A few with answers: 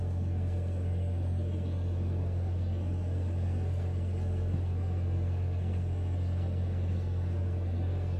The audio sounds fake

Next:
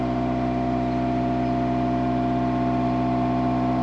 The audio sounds real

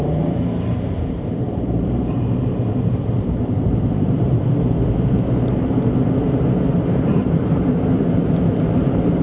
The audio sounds fake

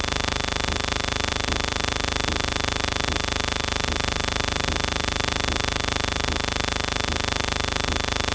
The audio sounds real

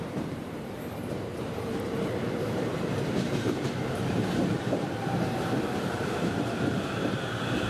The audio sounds fake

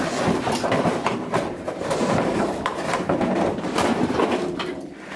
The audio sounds fake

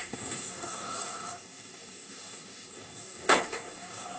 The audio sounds fake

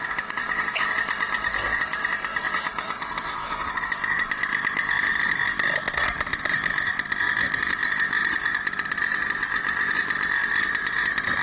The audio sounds real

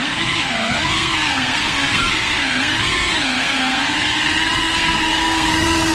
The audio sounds fake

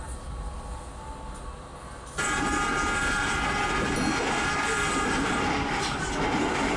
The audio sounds real